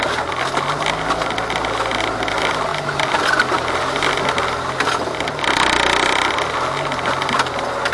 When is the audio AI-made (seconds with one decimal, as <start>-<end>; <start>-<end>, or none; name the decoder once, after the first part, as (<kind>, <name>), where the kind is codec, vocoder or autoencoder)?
none

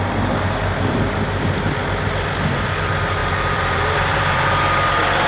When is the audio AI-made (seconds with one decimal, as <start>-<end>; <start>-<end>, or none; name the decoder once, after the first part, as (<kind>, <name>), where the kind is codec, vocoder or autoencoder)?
3.2-4.5 (vocoder, BigVGAN v2)

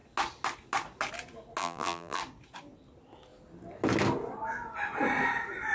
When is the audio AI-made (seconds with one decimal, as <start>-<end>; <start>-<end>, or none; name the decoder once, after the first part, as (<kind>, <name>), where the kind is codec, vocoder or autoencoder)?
1.6-2.2 (vocoder, BigVGAN v2)

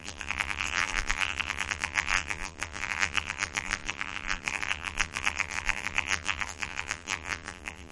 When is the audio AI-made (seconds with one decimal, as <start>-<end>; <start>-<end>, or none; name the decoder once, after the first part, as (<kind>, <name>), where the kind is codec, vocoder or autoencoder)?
0.0-7.9 (vocoder, BigVGAN v2)

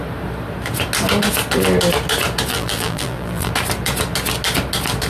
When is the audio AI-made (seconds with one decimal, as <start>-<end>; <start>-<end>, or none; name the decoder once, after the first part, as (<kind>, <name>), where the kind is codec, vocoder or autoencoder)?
2.5-3.5 (vocoder, BigVGAN v2)

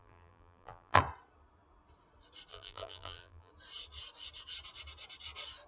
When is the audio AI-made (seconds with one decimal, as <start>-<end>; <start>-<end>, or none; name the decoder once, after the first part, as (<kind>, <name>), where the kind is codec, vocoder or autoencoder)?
0.0-1.0 (vocoder, BigVGAN v2); 2.5-3.5

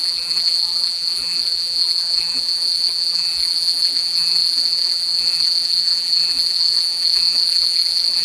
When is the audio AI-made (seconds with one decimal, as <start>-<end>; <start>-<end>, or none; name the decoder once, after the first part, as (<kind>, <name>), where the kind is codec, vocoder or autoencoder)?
0.0-8.2 (vocoder, BigVGAN v2)

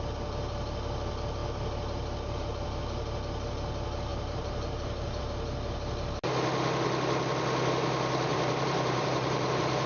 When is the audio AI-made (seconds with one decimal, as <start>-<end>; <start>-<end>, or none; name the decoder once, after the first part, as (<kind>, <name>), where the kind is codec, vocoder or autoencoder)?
4.1-5.2 (vocoder, BigVGAN v2); 8.3-9.9